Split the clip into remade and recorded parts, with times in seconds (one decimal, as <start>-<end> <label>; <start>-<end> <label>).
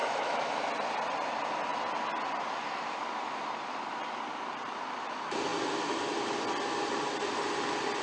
0.0-0.5 remade; 0.5-8.0 recorded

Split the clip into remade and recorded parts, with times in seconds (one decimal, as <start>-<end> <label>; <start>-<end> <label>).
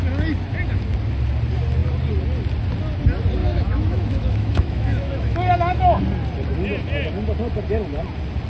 0.0-3.4 recorded; 3.4-6.0 remade; 6.0-8.5 recorded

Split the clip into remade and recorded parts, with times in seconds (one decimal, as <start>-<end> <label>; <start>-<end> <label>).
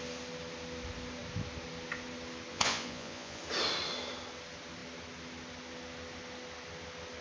0.0-2.5 recorded; 2.5-3.4 remade; 3.4-7.2 recorded